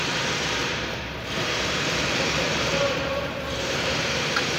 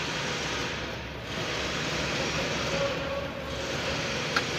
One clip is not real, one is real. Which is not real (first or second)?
first